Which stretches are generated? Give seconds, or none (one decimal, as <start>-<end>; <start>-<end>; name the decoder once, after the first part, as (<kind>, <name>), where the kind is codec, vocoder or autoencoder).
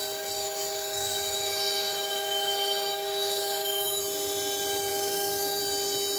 0.4-4.0 (autoencoder, DAC-VAE); 4.9-5.6